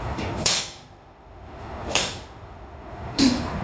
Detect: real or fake fake